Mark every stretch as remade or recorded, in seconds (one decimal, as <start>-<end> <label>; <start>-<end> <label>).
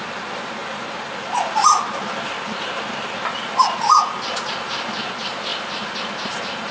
0.0-6.7 recorded